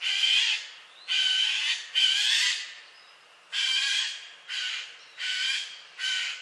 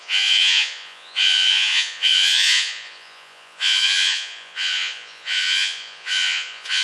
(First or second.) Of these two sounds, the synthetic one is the second